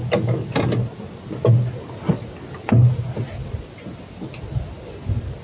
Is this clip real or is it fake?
real